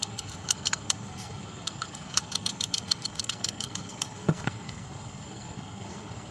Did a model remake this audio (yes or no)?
yes